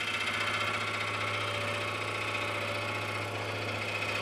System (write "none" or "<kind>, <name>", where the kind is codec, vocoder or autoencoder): none